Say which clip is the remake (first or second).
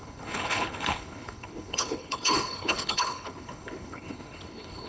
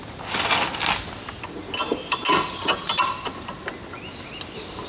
first